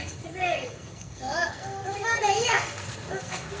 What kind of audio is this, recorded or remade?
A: remade